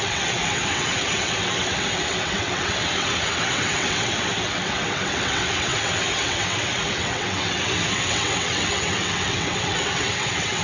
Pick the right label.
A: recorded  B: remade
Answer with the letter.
B